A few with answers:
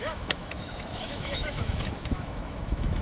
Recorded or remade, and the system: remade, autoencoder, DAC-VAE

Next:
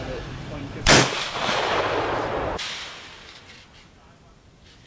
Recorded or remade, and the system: remade, vocoder, BigVGAN v2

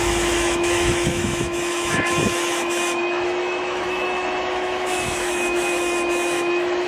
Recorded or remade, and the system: remade, autoencoder, DAC-VAE